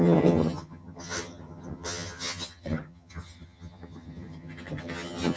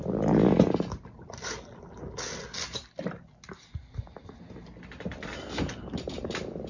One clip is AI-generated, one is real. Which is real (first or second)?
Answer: second